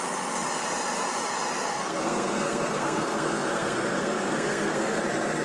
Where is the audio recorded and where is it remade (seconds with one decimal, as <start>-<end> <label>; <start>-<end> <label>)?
0.0-1.8 recorded; 1.8-5.0 remade; 5.0-5.4 recorded